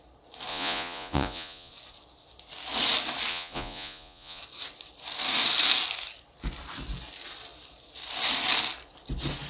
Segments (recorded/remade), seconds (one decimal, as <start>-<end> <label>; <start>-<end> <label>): 0.0-0.5 recorded; 0.5-1.7 remade; 1.7-3.3 recorded; 3.3-4.4 remade; 4.4-9.5 recorded